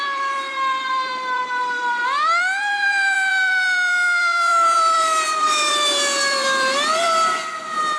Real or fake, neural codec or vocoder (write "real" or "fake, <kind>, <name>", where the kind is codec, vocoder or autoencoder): fake, vocoder, BigVGAN v2